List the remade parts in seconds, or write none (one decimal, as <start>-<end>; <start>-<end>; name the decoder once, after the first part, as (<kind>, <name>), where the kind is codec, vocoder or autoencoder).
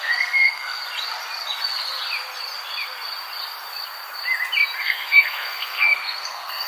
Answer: 0.0-0.8 (codec, SNAC); 4.8-6.7